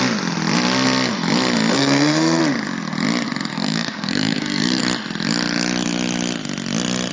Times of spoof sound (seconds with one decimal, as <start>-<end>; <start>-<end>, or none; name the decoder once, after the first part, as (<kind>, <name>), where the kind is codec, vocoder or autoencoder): 1.7-2.4 (codec, SNAC); 3.5-4.8